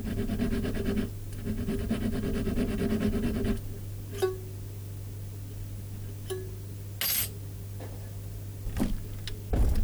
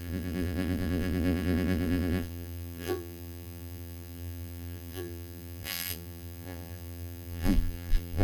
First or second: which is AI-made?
second